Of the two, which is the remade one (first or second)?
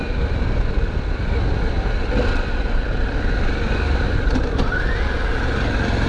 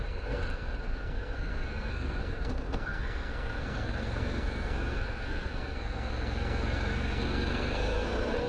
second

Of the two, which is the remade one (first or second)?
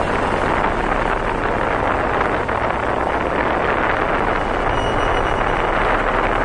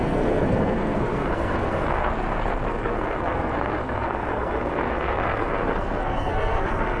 second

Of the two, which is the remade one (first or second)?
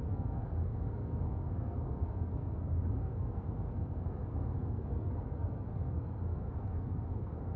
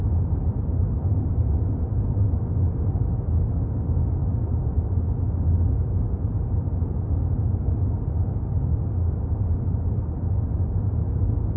first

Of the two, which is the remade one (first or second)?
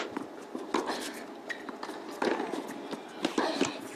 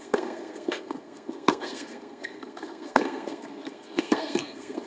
second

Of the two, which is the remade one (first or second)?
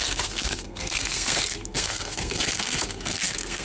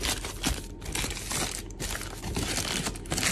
first